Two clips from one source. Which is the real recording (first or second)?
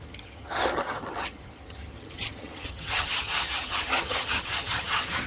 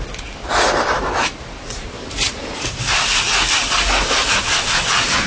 second